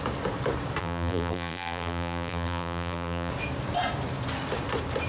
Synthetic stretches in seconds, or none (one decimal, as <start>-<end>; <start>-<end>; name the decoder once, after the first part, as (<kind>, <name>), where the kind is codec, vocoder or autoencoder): 0.8-3.3 (vocoder, BigVGAN v2)